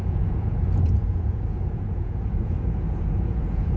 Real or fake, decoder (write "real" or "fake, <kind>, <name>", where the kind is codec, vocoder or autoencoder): fake, vocoder, Vocos